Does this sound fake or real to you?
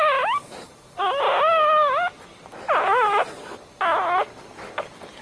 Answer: real